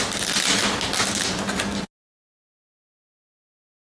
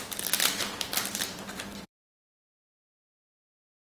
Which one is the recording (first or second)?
first